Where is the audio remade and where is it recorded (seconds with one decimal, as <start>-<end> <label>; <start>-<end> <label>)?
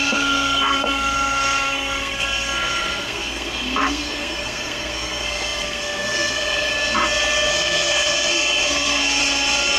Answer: 0.0-6.7 remade; 6.7-7.5 recorded; 7.5-9.2 remade; 9.2-9.8 recorded